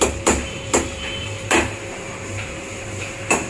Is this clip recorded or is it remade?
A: remade